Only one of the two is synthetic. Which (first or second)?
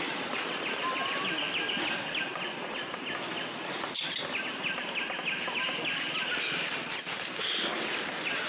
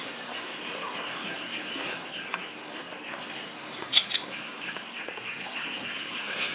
second